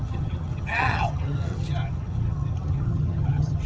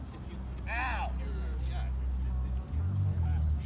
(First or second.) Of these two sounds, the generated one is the first